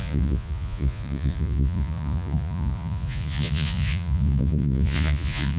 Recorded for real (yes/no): no